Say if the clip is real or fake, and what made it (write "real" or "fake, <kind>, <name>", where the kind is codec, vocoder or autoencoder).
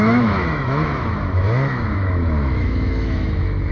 fake, autoencoder, DAC-VAE